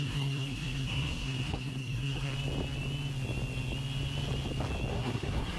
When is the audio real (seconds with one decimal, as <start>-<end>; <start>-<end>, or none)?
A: 2.3-4.9